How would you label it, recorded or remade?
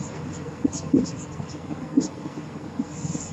remade